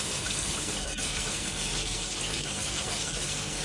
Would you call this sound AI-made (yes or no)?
yes